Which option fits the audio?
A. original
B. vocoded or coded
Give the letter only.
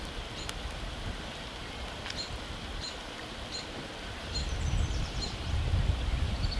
A